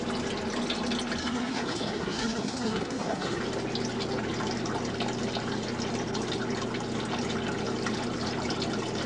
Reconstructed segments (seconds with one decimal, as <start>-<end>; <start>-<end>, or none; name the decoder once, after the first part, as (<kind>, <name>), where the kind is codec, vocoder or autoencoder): 1.2-3.4 (codec, SNAC)